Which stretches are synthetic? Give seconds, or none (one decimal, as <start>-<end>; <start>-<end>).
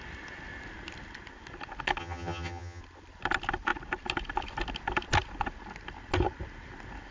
2.0-2.8